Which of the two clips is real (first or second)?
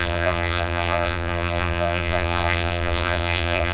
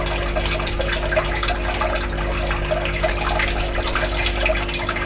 second